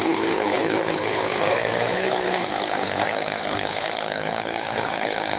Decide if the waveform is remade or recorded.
remade